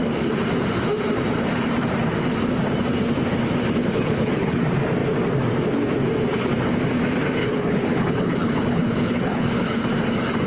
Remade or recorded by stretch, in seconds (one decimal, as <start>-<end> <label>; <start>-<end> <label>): 0.0-3.8 recorded; 3.8-4.6 remade; 4.6-7.4 recorded; 7.4-9.8 remade; 9.8-10.5 recorded